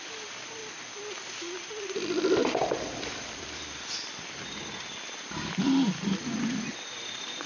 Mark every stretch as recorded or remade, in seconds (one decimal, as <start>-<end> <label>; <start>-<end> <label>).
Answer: 0.0-0.6 remade; 0.6-1.7 recorded; 1.7-7.5 remade